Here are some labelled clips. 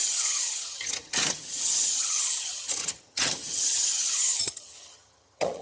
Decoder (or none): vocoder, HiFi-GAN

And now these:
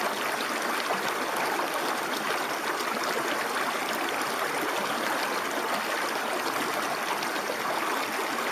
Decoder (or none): none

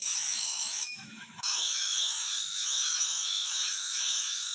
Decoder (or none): autoencoder, DAC-VAE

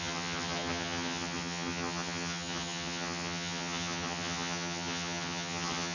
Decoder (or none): vocoder, HiFi-GAN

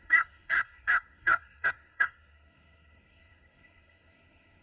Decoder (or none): codec, SNAC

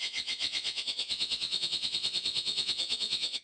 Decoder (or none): vocoder, Vocos